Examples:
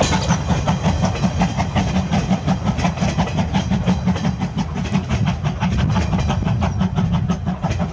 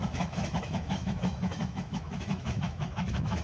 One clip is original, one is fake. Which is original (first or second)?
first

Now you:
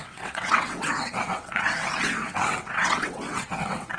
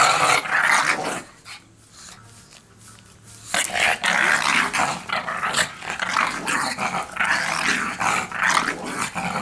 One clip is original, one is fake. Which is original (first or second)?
second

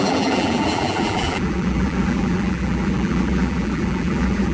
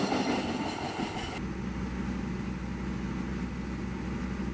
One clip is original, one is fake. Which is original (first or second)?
second